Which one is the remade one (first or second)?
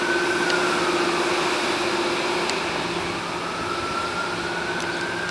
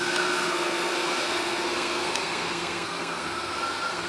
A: second